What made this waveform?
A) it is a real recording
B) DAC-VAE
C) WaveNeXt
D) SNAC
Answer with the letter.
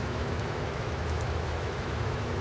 B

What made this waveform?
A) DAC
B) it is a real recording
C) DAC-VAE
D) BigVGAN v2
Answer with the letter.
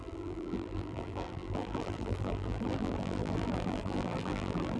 D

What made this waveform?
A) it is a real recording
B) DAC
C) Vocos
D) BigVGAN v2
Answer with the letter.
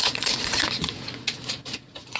C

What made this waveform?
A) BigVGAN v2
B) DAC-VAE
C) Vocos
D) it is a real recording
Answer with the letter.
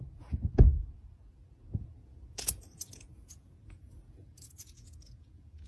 C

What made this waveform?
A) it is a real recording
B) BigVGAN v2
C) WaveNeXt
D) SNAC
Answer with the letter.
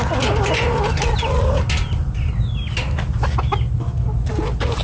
A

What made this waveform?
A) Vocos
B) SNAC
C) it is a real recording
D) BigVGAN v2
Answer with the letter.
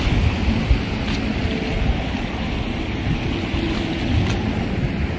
C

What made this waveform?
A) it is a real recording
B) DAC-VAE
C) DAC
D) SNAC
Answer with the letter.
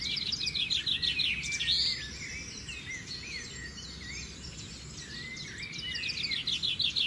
A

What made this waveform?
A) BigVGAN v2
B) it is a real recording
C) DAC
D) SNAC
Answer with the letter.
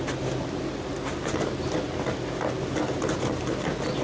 B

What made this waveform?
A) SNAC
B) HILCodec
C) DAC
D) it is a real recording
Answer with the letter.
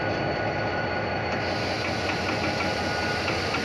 D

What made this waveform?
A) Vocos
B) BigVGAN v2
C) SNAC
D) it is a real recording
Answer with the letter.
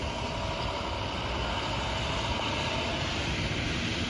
D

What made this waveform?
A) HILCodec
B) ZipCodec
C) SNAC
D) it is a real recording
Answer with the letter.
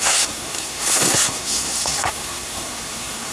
C